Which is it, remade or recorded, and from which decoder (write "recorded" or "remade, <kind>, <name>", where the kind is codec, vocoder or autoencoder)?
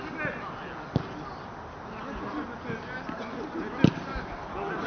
recorded